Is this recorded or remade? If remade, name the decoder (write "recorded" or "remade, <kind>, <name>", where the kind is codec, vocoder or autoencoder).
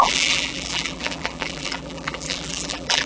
remade, vocoder, BigVGAN v2